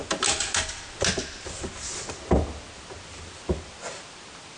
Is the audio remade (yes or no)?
no